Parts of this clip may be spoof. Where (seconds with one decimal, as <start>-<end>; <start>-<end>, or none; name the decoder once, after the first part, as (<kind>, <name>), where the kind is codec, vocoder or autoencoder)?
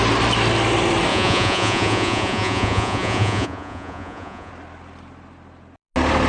1.1-4.5 (vocoder, Vocos)